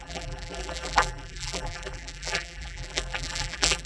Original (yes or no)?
no